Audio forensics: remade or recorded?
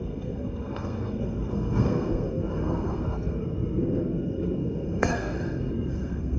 remade